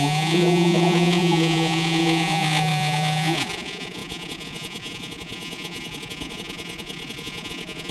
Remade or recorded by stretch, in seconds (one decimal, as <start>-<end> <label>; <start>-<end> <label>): 0.0-7.9 remade